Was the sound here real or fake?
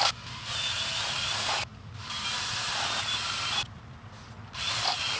real